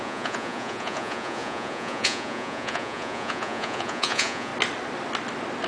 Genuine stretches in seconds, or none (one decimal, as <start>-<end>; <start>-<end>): 4.5-5.7